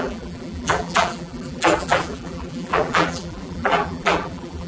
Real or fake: fake